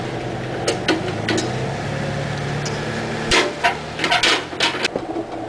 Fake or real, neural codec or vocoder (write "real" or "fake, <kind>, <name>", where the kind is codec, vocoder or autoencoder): real